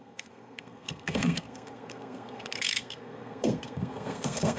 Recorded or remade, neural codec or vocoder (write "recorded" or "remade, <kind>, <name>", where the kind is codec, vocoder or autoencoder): remade, codec, SNAC